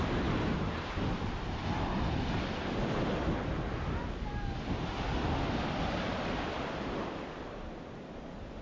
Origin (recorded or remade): recorded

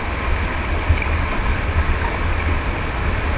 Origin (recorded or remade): recorded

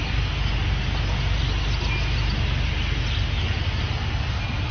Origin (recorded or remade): recorded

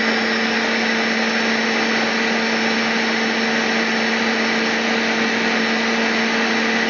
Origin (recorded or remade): recorded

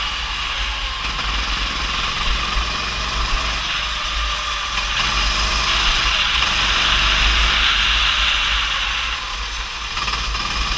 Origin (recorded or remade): recorded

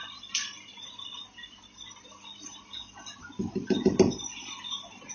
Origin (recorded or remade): recorded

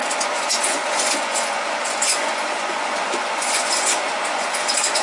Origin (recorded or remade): remade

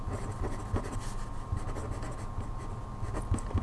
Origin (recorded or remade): recorded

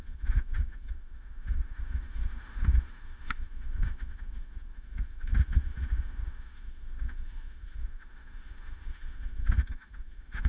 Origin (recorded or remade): remade